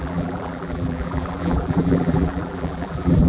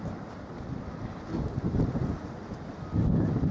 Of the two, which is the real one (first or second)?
second